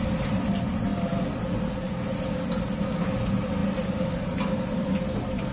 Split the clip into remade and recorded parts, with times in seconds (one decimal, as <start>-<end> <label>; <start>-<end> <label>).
0.0-5.5 recorded